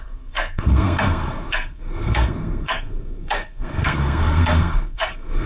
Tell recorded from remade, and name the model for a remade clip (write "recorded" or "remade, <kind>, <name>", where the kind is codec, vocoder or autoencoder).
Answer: remade, codec, SNAC